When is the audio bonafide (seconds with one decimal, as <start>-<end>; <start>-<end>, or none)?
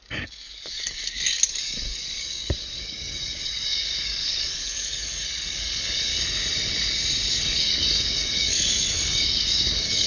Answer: 6.1-7.3